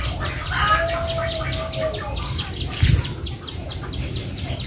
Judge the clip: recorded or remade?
recorded